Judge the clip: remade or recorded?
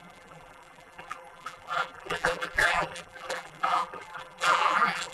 remade